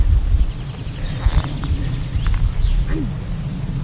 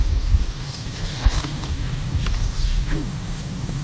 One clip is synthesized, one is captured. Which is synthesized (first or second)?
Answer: second